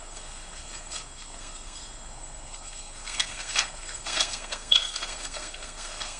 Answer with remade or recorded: remade